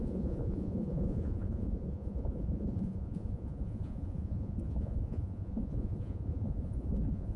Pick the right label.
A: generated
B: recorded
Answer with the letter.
A